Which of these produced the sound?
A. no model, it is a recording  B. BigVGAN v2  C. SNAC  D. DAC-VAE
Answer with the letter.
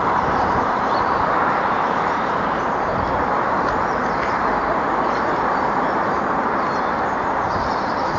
B